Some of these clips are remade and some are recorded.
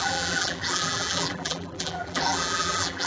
remade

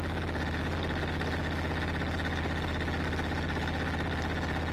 recorded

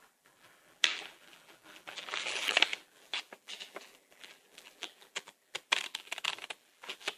remade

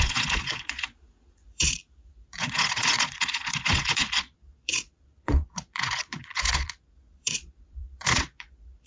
remade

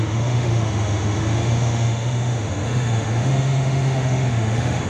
remade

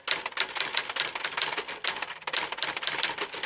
recorded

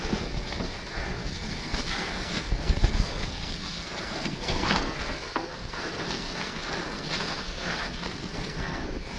remade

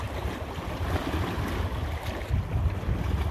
recorded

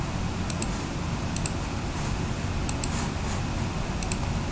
recorded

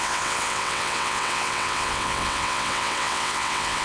remade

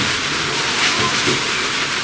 recorded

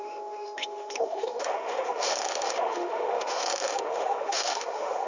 remade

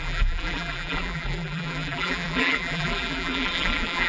remade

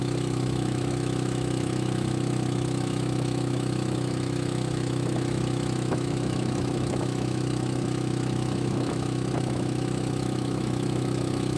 remade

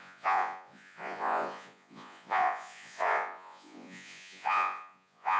remade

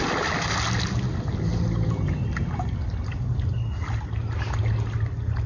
recorded